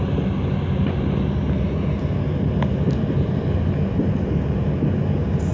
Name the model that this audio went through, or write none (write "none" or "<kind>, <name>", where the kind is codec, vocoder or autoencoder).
none